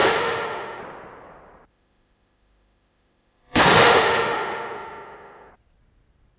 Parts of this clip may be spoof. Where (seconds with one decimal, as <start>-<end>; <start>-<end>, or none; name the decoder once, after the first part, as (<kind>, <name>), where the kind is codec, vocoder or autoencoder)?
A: 0.0-0.8 (autoencoder, DAC-VAE); 1.7-5.5